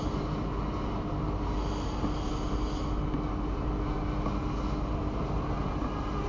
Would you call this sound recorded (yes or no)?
yes